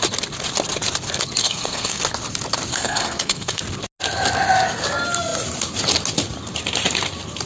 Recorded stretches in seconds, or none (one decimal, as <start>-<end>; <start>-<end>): 0.0-1.4; 2.0-2.7; 3.6-7.5